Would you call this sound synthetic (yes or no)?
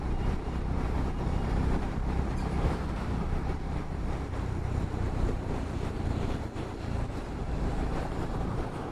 yes